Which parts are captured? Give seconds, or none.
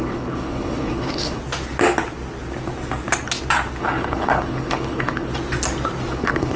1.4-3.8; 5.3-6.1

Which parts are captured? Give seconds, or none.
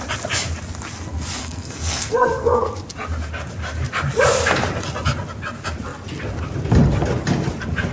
0.0-1.4; 2.7-7.9